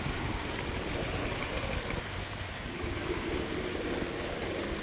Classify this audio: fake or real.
real